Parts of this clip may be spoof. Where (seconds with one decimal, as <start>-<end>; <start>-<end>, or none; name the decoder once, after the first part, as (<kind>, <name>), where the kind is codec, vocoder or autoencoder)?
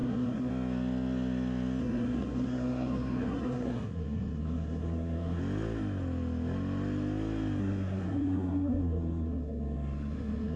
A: 0.0-0.5 (codec, SNAC); 1.8-5.4; 7.6-10.6